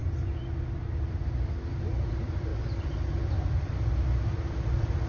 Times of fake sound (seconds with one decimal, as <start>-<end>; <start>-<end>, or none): 2.1-2.5; 3.5-5.1